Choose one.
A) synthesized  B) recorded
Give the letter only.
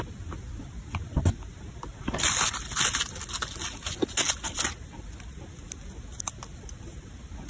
B